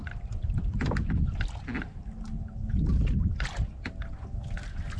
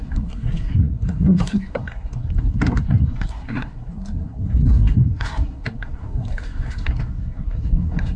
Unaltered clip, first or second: first